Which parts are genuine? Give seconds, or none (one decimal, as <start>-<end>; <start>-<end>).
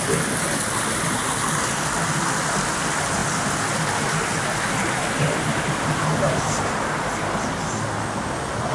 0.0-8.7